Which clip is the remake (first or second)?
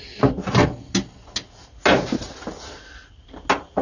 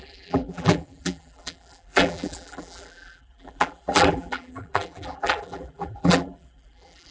second